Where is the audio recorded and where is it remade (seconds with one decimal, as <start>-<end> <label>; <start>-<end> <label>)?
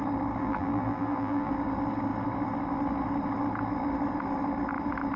0.0-0.4 recorded; 0.4-1.5 remade; 1.5-5.2 recorded